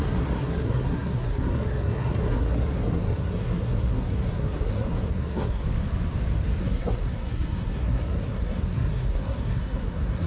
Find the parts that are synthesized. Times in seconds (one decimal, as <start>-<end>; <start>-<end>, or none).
0.0-5.6; 6.6-10.3